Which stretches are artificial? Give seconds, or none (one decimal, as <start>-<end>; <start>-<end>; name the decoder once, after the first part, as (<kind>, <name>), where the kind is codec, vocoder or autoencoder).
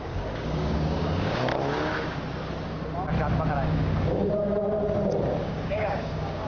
0.0-1.5 (codec, DAC); 3.5-4.2; 5.4-6.5